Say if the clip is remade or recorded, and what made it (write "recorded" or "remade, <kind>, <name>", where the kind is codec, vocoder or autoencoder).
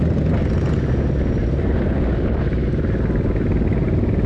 recorded